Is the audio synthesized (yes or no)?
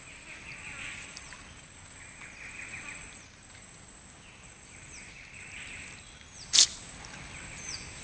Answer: no